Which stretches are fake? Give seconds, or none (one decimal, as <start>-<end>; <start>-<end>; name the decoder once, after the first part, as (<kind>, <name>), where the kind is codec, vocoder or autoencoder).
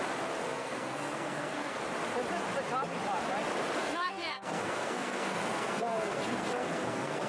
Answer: 0.4-1.8 (codec, SNAC); 3.8-7.3